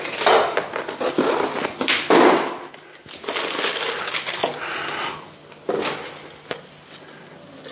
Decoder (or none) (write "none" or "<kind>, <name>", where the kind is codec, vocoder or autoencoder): none